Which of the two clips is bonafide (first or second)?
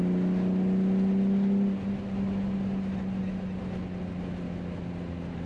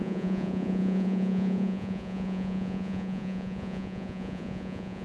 first